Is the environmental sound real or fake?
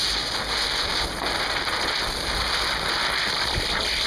real